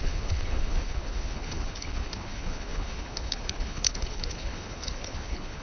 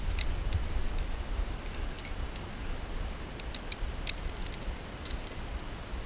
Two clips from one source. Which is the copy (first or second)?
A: first